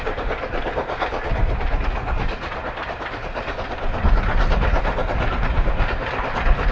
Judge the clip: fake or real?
real